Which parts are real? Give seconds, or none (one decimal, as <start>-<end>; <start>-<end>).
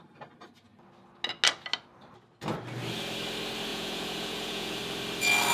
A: 0.0-3.7; 4.8-5.5